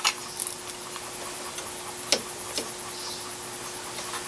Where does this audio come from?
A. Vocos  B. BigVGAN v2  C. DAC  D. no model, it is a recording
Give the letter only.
D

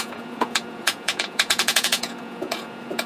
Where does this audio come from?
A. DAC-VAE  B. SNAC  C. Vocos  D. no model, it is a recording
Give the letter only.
C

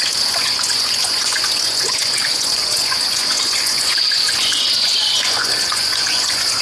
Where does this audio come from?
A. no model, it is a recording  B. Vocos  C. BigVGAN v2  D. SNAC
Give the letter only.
B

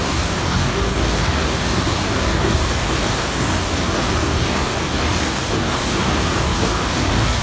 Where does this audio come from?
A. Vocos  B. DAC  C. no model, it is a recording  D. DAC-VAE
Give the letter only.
B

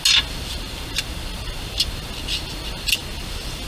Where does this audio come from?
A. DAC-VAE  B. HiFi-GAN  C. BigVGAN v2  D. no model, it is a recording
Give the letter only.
D